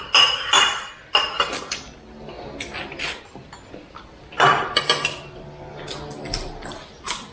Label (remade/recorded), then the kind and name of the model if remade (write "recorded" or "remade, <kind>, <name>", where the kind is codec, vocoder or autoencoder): recorded